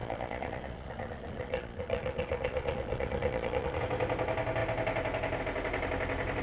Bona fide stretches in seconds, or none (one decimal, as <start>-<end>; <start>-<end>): 3.8-6.4